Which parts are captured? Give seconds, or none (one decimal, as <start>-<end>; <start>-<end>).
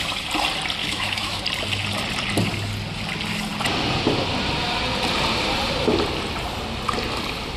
0.0-0.8; 1.4-7.6